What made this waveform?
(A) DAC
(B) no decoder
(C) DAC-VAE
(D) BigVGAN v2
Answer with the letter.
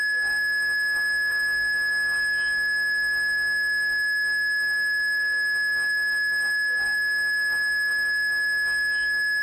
C